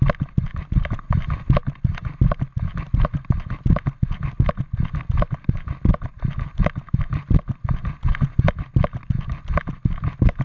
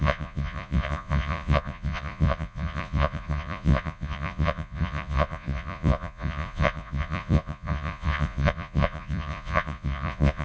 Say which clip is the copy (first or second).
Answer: second